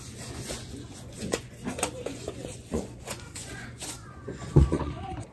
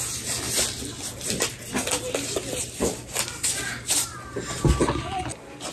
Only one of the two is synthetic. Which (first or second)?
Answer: first